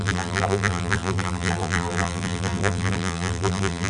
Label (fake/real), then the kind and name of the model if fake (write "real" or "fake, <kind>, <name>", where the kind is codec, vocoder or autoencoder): fake, vocoder, BigVGAN v2